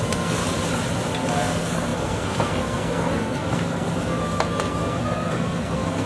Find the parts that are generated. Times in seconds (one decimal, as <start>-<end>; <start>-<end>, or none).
0.0-0.4; 1.3-6.1